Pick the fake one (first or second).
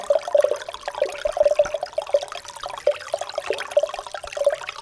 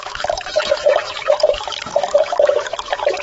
second